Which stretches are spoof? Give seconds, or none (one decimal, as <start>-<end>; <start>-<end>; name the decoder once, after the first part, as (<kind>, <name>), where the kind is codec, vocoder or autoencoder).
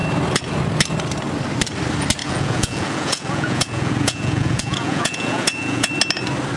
2.2-5.9 (vocoder, Vocos)